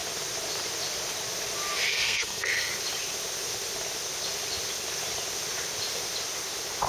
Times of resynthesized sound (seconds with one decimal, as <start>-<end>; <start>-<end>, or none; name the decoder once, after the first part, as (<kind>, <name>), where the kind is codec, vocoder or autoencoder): 1.9-2.7 (codec, SNAC)